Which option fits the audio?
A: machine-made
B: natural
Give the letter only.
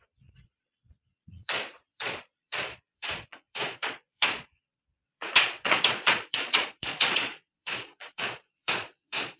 A